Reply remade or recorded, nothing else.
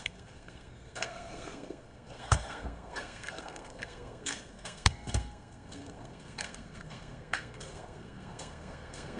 remade